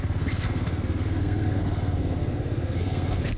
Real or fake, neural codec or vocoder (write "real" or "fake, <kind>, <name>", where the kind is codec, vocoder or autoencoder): fake, codec, SNAC